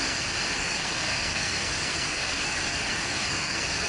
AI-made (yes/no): yes